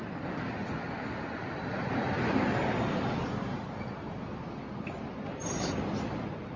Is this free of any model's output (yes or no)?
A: yes